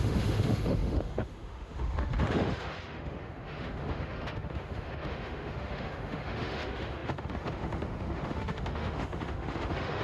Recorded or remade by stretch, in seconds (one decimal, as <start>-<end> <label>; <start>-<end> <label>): 0.0-10.0 remade